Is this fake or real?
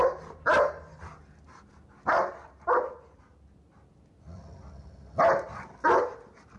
real